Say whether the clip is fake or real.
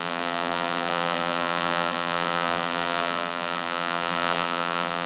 fake